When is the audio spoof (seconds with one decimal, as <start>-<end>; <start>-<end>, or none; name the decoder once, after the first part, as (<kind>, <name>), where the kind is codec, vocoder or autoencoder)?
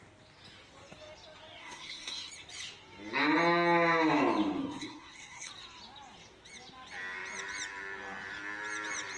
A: 1.6-2.3 (codec, SNAC); 4.6-5.5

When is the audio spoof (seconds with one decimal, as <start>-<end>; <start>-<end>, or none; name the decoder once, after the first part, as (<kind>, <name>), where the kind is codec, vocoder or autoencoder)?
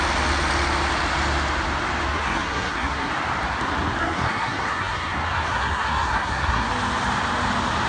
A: 2.1-3.1 (codec, SNAC); 4.0-6.7